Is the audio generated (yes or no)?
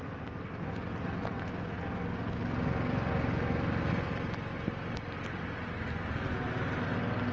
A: no